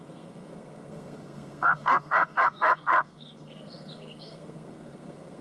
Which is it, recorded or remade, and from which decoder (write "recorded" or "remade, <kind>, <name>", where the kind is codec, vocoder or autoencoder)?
remade, codec, SNAC